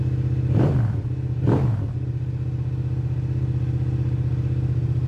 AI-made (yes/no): no